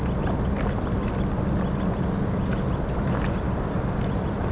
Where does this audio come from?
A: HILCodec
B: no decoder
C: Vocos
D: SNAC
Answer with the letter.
B